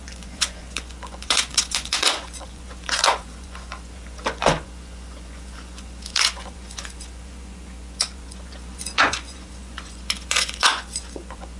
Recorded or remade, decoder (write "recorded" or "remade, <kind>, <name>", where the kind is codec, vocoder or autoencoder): remade, vocoder, Vocos